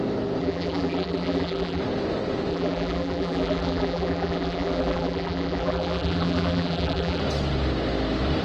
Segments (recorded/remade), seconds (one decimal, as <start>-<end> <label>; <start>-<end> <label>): 0.0-0.4 recorded; 0.4-1.8 remade; 1.8-2.5 recorded; 2.5-7.2 remade; 7.2-8.4 recorded